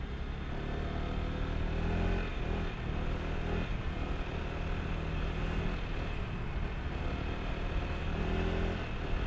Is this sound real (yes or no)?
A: yes